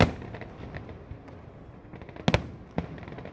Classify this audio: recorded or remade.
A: recorded